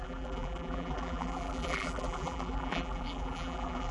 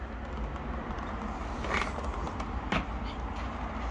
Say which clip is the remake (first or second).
first